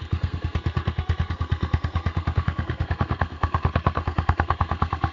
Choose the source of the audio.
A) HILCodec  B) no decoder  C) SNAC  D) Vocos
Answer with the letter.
C